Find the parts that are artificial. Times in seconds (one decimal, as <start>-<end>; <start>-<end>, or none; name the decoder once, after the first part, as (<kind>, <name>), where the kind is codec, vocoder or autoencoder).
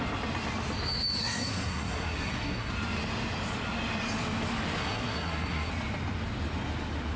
1.2-2.7 (codec, SNAC); 4.8-5.7